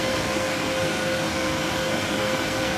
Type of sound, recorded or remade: remade